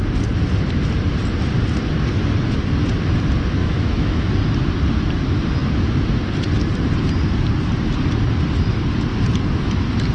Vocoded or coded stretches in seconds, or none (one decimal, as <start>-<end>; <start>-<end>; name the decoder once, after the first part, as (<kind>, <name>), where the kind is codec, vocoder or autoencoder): 3.6-4.3 (autoencoder, DAC-VAE)